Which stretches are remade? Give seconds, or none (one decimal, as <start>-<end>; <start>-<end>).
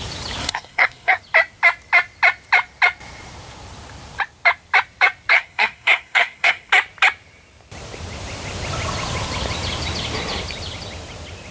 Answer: 0.4-1.2; 5.3-6.7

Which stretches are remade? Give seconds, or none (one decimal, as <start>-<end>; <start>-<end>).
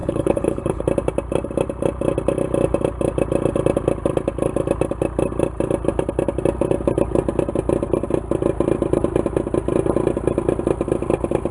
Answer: 0.0-0.8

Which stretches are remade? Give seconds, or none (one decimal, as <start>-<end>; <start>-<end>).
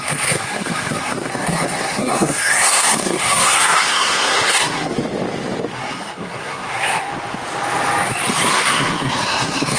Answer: 0.0-5.0; 5.7-7.1; 8.5-9.8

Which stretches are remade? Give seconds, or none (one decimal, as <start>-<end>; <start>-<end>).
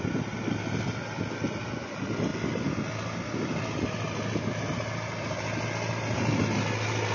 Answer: none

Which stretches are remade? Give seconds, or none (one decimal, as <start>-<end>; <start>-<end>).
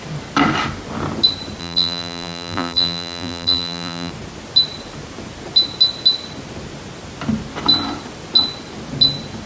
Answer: 1.6-4.1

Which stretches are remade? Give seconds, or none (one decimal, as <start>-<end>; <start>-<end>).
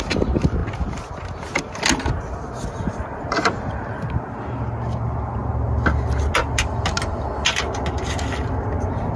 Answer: none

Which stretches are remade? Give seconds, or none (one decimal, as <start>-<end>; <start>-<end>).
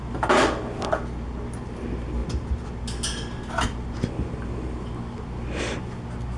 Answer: none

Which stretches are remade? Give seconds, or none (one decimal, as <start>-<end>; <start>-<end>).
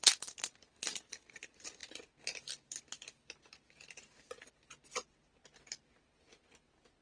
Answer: none